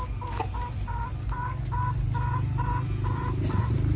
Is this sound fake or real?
real